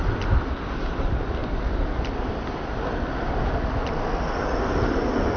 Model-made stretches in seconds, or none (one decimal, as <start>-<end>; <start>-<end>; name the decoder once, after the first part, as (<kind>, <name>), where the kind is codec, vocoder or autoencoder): none